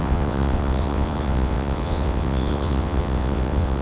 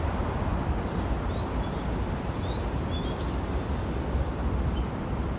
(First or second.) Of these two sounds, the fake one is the first